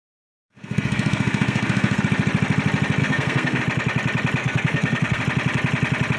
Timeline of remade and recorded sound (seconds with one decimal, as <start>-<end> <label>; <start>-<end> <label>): 0.0-2.0 remade; 2.0-3.0 recorded; 3.0-3.6 remade; 3.6-4.4 recorded; 4.4-5.2 remade; 5.2-6.2 recorded